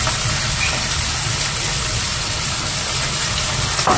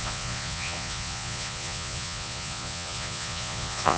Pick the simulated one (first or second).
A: second